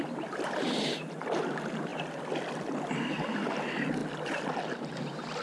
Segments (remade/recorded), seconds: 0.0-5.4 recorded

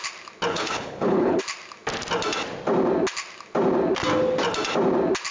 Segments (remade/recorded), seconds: 0.0-0.5 recorded; 0.5-1.4 remade; 1.4-5.3 recorded

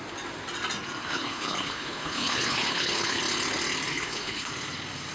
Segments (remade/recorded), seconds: 0.0-1.0 recorded; 1.0-3.2 remade; 3.2-3.9 recorded; 3.9-4.5 remade; 4.5-5.1 recorded

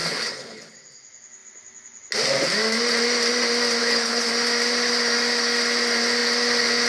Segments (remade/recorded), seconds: 0.0-0.7 remade; 0.7-3.8 recorded; 3.8-4.3 remade; 4.3-6.9 recorded